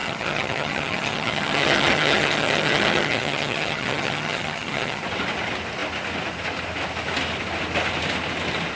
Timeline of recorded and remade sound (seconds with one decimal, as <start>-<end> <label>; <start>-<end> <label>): 0.0-5.0 remade; 5.0-8.8 recorded